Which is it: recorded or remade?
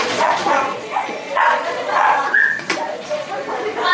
remade